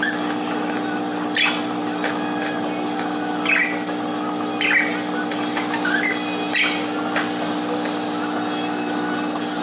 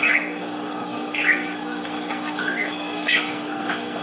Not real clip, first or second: second